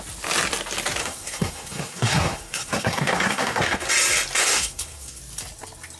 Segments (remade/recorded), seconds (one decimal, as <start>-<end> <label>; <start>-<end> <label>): 0.0-1.0 recorded; 1.0-3.9 remade; 3.9-4.4 recorded; 4.4-5.2 remade; 5.2-6.0 recorded